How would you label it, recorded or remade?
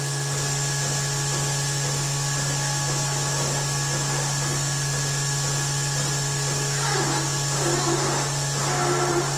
recorded